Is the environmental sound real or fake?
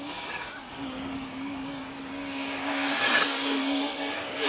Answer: fake